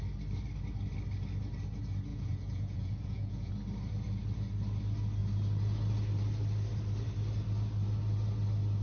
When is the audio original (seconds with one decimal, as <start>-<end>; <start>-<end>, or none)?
0.0-2.1; 3.5-8.8